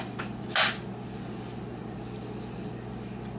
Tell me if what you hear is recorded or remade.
recorded